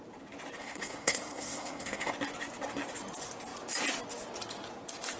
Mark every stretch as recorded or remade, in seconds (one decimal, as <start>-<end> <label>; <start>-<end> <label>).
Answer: 0.0-0.6 recorded; 0.6-2.1 remade; 2.1-5.2 recorded